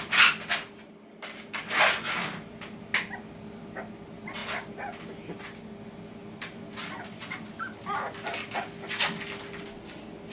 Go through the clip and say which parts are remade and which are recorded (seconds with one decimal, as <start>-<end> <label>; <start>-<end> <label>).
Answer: 0.0-10.3 recorded